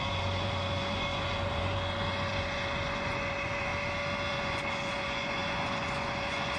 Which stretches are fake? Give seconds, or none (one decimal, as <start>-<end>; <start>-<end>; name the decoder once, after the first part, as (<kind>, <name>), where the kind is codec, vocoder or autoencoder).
0.0-3.7 (vocoder, Vocos); 4.3-6.6